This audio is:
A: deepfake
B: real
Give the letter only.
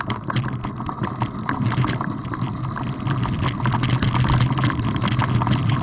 A